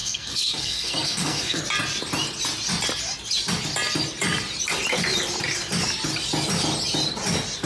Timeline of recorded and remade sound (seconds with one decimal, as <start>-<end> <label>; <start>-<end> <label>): 0.0-1.6 remade; 1.6-7.7 recorded